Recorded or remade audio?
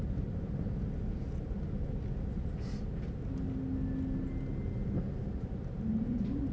recorded